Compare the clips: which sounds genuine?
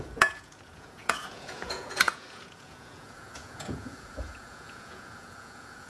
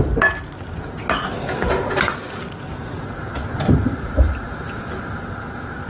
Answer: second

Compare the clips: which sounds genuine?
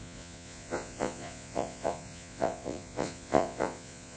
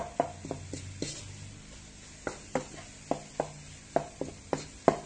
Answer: second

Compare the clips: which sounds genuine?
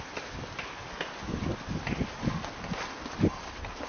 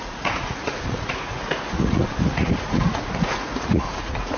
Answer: first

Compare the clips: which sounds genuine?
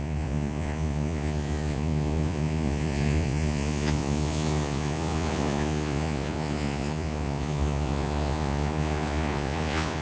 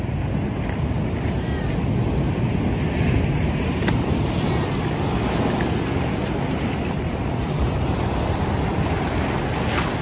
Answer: second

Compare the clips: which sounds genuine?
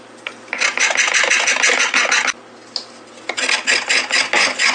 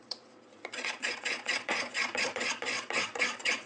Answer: first